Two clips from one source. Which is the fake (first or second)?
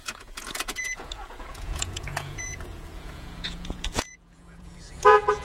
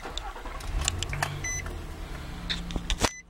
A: first